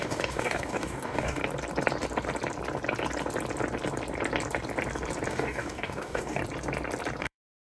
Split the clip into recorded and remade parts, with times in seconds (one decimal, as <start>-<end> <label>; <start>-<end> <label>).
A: 0.0-1.4 remade; 1.4-5.3 recorded; 5.3-6.4 remade; 6.4-7.2 recorded; 7.2-7.7 remade